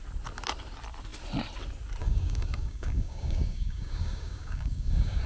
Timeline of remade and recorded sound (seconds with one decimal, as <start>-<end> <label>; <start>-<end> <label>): 0.0-2.0 recorded; 2.0-5.3 remade

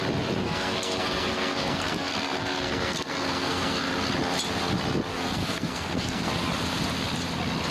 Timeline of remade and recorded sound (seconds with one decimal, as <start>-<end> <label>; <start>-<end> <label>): 0.0-0.4 recorded; 0.4-3.9 remade; 3.9-5.1 recorded; 5.1-6.3 remade; 6.3-7.7 recorded

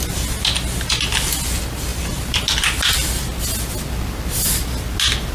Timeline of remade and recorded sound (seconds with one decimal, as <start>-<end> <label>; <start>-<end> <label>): 0.0-5.3 recorded

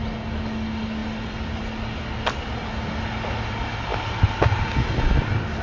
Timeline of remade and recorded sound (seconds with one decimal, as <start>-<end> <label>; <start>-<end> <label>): 0.0-5.6 recorded

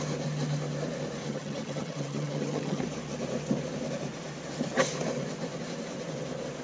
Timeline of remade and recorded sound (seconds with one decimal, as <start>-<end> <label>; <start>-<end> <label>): 0.0-1.2 recorded; 1.2-2.8 remade; 2.8-6.6 recorded

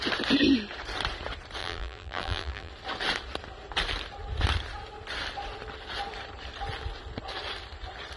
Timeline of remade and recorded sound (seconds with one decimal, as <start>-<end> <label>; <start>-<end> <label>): 0.0-1.6 recorded; 1.6-2.7 remade; 2.7-8.2 recorded

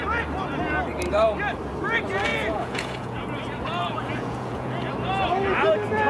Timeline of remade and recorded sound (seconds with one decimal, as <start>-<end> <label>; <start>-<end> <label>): 0.0-2.3 recorded; 2.3-3.2 remade; 3.2-3.8 recorded; 3.8-4.9 remade; 4.9-6.1 recorded